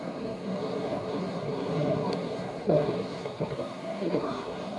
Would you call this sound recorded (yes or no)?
no